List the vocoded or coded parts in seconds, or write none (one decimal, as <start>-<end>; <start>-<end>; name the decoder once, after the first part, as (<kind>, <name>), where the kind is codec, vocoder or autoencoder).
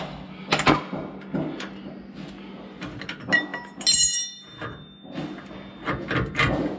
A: none